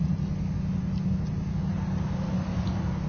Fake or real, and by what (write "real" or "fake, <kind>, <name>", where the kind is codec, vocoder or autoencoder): real